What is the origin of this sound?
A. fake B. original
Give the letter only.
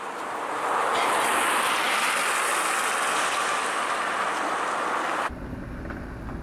B